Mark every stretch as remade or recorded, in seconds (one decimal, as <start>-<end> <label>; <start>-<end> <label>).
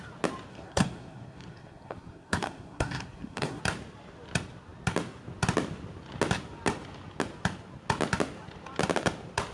0.0-0.5 recorded; 0.5-3.6 remade; 3.6-9.5 recorded